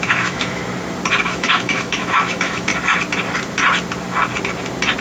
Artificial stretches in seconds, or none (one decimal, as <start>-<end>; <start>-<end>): 0.0-0.6; 1.2-2.7